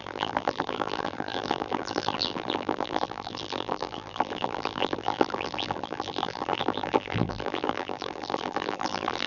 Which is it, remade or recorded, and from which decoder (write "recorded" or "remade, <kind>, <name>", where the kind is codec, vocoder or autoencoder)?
remade, vocoder, BigVGAN v2